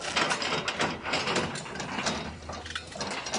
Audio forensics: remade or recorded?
recorded